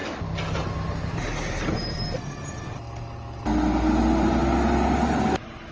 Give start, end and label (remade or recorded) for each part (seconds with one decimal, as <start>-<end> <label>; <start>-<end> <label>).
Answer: 0.0-5.7 recorded